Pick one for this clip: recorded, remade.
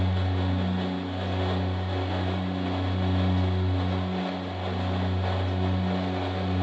recorded